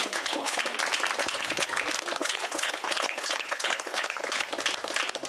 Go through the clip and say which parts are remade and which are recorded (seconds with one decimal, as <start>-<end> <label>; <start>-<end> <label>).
0.0-0.6 remade; 0.6-1.2 recorded; 1.2-1.7 remade; 1.7-2.2 recorded; 2.2-4.5 remade; 4.5-5.3 recorded